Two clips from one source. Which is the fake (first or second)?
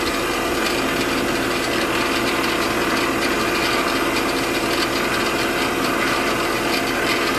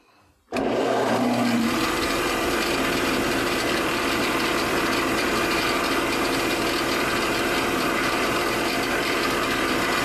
second